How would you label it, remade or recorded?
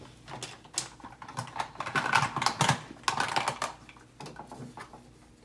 recorded